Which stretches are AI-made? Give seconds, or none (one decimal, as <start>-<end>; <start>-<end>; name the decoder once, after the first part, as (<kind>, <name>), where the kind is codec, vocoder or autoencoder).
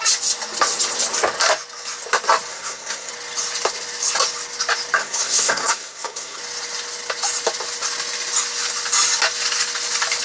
2.5-3.1 (codec, SNAC); 5.0-6.4